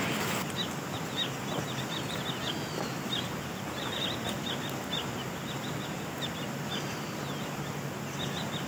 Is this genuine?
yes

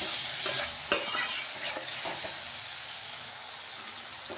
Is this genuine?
yes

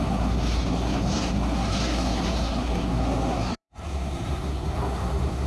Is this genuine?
no